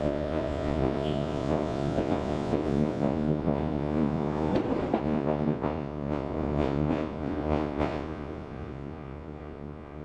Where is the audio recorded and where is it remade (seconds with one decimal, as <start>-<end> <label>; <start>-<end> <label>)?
0.0-4.5 remade; 4.5-5.0 recorded; 5.0-10.0 remade